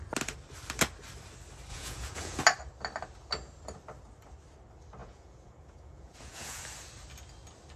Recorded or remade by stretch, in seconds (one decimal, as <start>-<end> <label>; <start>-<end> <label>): 0.0-1.7 recorded; 1.7-2.4 remade; 2.4-5.0 recorded; 5.0-6.6 remade; 6.6-7.8 recorded